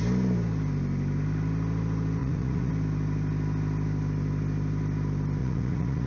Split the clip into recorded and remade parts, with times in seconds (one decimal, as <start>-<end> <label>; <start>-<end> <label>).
0.0-2.2 recorded; 2.2-2.7 remade; 2.7-5.4 recorded; 5.4-6.1 remade